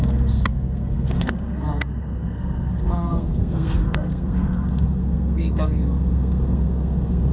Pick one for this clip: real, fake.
fake